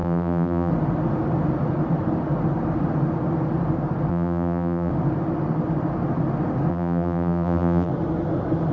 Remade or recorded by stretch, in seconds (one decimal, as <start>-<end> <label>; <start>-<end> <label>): 0.0-0.7 remade; 0.7-4.1 recorded; 4.1-4.9 remade; 4.9-6.7 recorded; 6.7-7.9 remade; 7.9-8.7 recorded